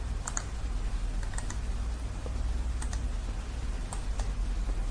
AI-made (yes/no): no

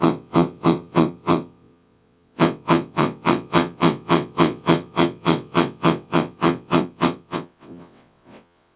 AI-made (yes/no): yes